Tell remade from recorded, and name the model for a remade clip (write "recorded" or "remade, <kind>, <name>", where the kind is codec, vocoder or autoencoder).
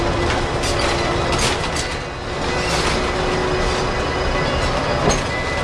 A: recorded